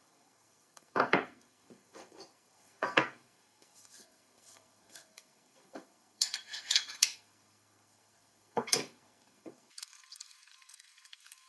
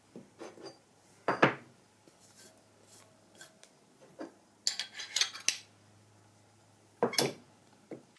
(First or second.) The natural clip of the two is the second